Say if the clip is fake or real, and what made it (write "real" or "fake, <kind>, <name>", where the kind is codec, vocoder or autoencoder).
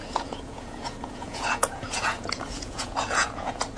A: fake, vocoder, Vocos